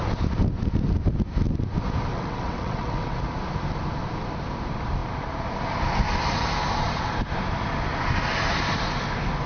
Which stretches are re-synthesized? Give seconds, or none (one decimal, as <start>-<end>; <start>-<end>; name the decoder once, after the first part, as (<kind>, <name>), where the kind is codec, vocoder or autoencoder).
2.1-3.2 (vocoder, WaveNeXt)